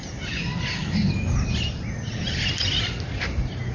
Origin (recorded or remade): recorded